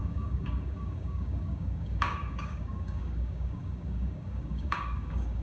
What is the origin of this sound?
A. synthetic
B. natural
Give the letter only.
A